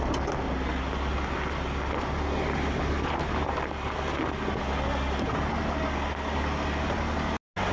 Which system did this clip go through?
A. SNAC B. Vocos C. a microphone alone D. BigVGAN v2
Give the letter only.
C